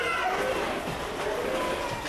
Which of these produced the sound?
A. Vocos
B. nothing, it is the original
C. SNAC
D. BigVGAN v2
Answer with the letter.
B